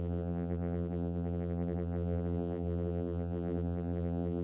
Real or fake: fake